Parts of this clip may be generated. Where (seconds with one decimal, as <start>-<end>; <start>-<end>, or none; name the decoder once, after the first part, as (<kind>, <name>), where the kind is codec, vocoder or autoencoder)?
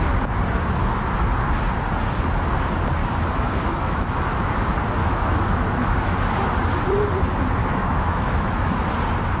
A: 3.0-4.5 (autoencoder, DAC-VAE); 5.0-6.1; 7.6-8.7